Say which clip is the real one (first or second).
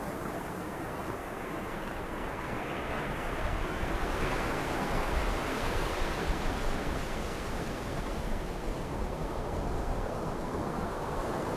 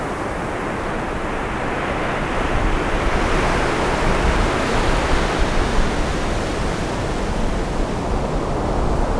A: second